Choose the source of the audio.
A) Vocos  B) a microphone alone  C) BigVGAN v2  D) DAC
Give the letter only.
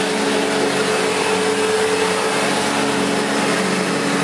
B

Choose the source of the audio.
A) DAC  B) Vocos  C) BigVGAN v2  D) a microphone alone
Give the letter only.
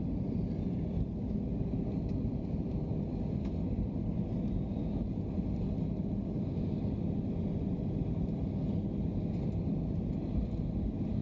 D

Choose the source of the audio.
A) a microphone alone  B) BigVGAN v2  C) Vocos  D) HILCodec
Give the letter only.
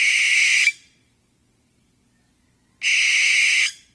A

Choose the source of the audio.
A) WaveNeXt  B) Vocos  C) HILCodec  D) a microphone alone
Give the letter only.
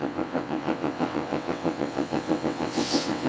A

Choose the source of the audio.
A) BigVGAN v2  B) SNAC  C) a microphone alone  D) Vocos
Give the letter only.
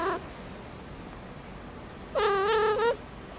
C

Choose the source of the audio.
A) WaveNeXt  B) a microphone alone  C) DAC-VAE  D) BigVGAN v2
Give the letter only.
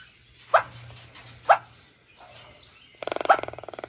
B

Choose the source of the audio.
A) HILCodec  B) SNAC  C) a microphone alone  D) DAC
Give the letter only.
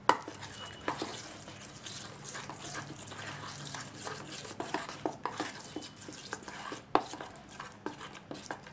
C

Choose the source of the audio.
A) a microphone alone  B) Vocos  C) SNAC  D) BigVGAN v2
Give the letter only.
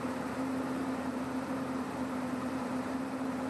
D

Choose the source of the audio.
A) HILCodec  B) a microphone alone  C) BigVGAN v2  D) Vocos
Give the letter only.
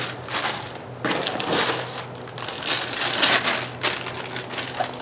B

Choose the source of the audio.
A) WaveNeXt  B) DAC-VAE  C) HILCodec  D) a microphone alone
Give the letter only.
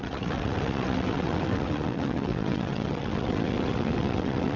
A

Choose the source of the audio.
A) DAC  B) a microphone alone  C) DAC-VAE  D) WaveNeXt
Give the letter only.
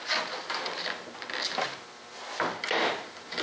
B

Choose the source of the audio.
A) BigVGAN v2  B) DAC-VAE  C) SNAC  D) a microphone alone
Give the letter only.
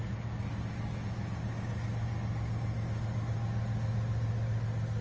D